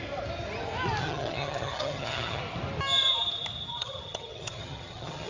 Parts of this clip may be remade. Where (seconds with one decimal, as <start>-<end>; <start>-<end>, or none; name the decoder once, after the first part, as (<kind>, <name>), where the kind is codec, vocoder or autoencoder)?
1.0-2.4 (vocoder, HiFi-GAN); 3.7-5.3